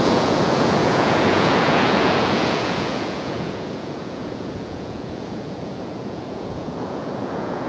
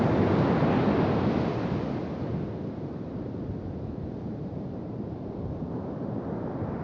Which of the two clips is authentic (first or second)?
second